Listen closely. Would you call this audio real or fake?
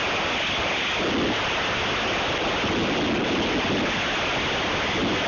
real